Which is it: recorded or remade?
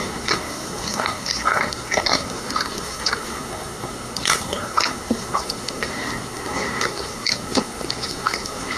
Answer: remade